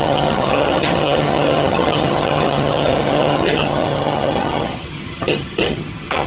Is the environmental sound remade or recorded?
remade